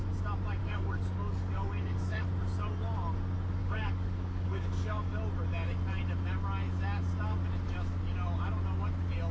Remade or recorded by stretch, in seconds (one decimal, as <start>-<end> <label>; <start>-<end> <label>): 0.0-0.6 recorded; 0.6-2.2 remade; 2.2-3.6 recorded; 3.6-5.2 remade; 5.2-9.3 recorded